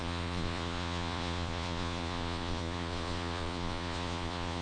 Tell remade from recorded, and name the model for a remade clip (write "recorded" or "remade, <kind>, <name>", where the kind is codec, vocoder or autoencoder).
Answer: remade, vocoder, Vocos